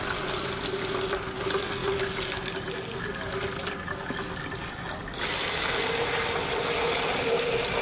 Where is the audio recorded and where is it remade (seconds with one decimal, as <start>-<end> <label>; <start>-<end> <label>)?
0.0-7.8 recorded

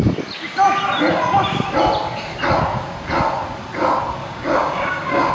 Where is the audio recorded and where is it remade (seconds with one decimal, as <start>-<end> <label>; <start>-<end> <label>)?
0.0-4.2 recorded; 4.2-5.3 remade

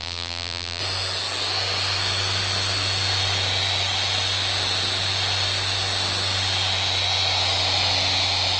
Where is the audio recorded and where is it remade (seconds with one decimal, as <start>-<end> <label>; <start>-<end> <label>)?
0.0-0.8 remade; 0.8-8.6 recorded